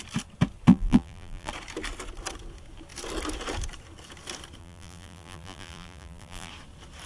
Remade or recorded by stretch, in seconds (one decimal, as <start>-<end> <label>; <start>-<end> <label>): 0.0-0.7 recorded; 0.7-1.5 remade; 1.5-4.6 recorded; 4.6-6.5 remade; 6.5-7.1 recorded